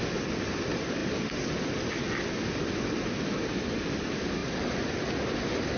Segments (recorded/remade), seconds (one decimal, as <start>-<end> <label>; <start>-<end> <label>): 0.0-5.8 recorded